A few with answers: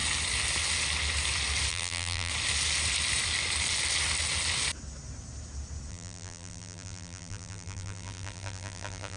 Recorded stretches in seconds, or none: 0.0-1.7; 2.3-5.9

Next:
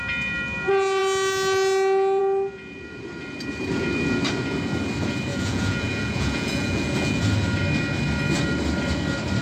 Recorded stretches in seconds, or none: 0.0-5.3; 7.2-9.4

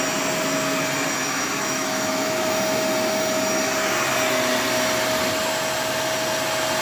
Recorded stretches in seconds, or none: 0.0-1.2; 2.6-6.8

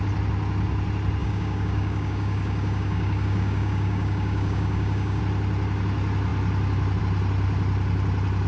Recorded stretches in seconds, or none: 0.0-1.2; 5.2-8.5

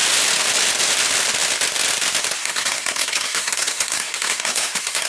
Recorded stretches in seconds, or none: 0.0-2.4

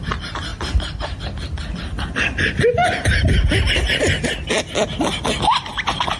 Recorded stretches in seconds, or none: 0.0-6.2